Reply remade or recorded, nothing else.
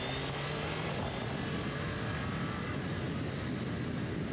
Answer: recorded